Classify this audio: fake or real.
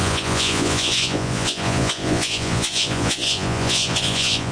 fake